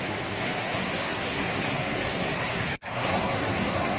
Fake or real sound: fake